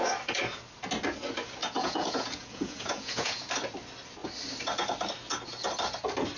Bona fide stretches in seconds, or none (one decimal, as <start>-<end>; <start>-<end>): 0.0-1.6; 3.5-6.4